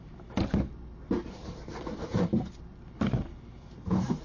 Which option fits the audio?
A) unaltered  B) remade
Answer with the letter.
B